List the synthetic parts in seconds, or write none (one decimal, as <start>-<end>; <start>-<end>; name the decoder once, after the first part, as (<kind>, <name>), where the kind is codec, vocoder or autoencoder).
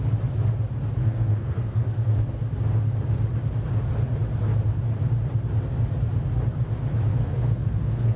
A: 1.0-2.4 (codec, SNAC); 7.1-8.2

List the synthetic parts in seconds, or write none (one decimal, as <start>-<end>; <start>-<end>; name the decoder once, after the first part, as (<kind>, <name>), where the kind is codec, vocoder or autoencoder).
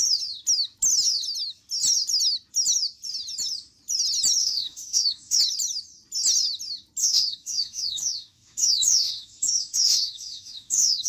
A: 4.4-5.4 (autoencoder, DAC-VAE); 7.0-11.1